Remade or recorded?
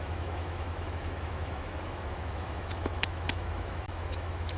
remade